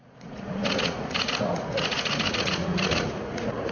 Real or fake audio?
fake